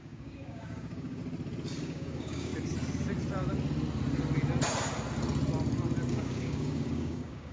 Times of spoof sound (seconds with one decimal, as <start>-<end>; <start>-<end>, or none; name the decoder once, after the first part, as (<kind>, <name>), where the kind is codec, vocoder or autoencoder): 0.0-1.2 (codec, DAC); 1.8-2.5; 6.1-7.5